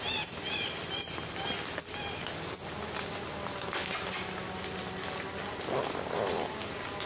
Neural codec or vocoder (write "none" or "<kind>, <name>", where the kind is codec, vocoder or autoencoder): none